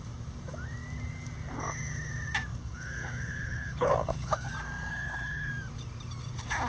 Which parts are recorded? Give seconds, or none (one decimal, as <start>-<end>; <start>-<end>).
0.0-2.5; 4.5-4.9; 5.5-6.7